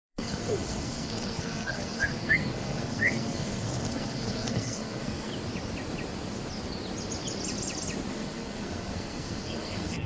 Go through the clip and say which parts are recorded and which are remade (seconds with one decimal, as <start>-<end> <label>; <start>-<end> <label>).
0.0-5.3 remade; 5.3-8.1 recorded; 8.1-10.1 remade